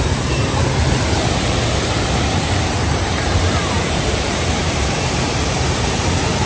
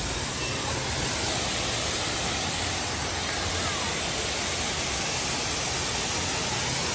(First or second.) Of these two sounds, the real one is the second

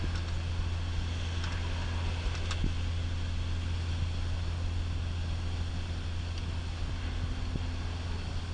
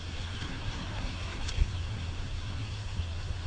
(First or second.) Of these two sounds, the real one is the first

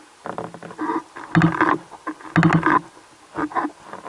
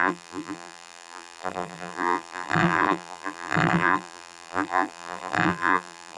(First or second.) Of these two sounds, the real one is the first